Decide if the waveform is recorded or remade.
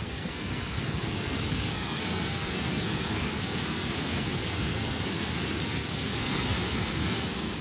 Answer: remade